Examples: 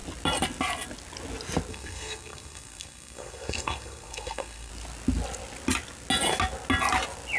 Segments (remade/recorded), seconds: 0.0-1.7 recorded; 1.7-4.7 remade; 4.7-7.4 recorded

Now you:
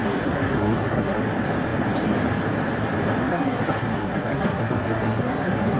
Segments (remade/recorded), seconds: 0.0-1.2 remade; 1.2-3.2 recorded; 3.2-5.8 remade